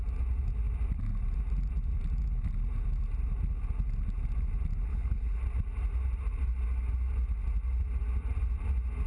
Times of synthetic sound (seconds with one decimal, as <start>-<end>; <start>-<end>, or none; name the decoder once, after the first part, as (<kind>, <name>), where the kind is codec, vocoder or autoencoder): 4.9-5.4 (codec, HILCodec)